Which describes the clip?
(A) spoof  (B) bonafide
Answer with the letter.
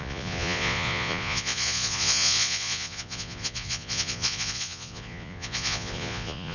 A